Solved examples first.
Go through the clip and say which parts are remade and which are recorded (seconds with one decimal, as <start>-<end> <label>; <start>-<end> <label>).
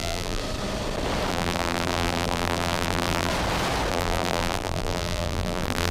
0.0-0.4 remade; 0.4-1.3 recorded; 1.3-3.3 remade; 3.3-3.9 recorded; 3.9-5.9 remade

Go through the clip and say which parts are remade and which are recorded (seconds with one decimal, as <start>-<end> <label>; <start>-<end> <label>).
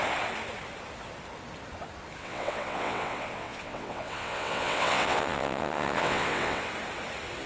0.0-2.2 recorded; 2.2-6.7 remade; 6.7-7.5 recorded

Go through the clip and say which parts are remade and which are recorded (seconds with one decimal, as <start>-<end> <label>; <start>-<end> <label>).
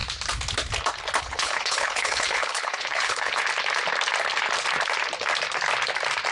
0.0-1.2 recorded; 1.2-3.4 remade; 3.4-6.3 recorded